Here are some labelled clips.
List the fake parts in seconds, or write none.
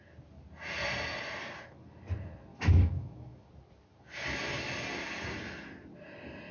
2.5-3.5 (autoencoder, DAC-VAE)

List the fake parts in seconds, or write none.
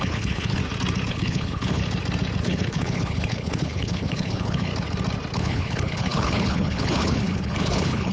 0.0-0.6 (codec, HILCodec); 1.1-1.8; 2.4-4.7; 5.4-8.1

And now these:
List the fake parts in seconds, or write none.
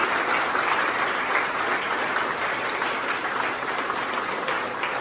none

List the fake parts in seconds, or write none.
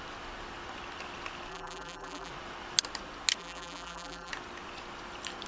1.5-2.3 (vocoder, BigVGAN v2); 3.4-4.3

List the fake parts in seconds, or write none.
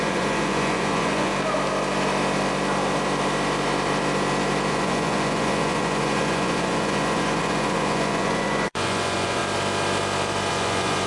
0.0-1.3 (vocoder, Vocos); 4.7-9.4; 10.5-11.1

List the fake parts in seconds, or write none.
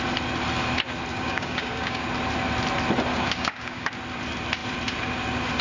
1.1-2.0 (codec, DAC); 3.1-3.9